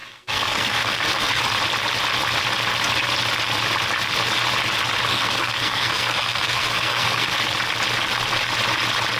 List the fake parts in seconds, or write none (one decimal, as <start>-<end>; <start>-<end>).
0.0-1.4; 5.1-7.4